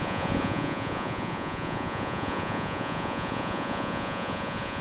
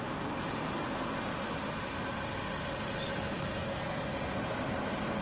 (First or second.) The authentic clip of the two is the second